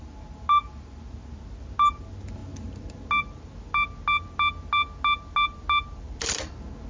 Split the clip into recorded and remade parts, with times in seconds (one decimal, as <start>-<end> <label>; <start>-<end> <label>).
0.0-6.9 recorded